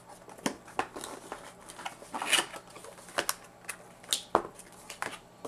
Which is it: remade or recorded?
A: recorded